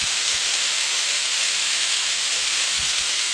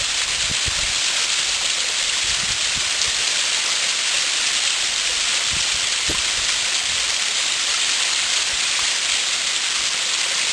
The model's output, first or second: first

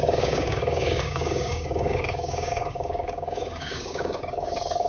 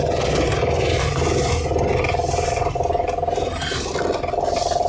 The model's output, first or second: first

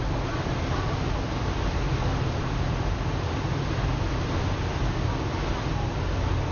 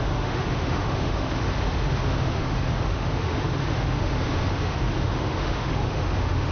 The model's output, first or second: second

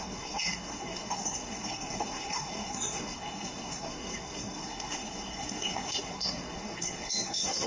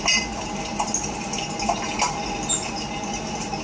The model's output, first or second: first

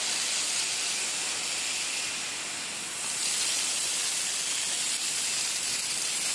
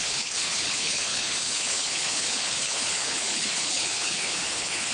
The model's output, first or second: second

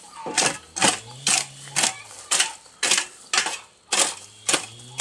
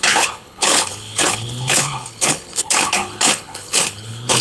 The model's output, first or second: second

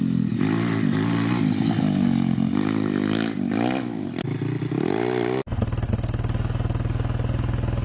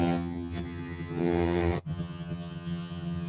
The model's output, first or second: second